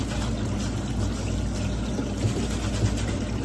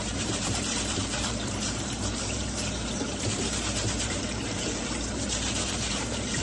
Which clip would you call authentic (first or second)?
first